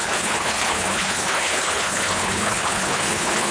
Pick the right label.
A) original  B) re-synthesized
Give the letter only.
B